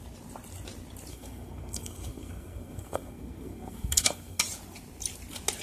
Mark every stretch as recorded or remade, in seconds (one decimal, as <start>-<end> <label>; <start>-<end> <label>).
0.0-1.1 recorded; 1.1-4.4 remade; 4.4-5.6 recorded

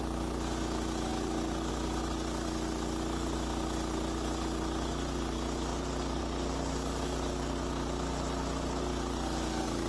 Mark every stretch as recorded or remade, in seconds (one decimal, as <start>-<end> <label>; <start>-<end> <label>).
0.0-9.9 recorded

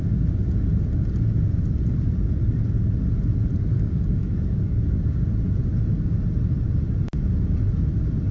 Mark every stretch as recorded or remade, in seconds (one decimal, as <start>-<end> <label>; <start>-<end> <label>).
0.0-3.7 recorded; 3.7-5.0 remade; 5.0-8.3 recorded